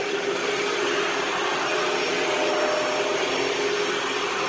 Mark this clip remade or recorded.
recorded